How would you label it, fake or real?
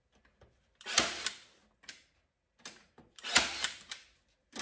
real